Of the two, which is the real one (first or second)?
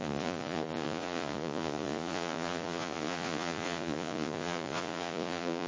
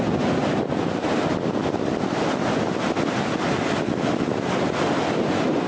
second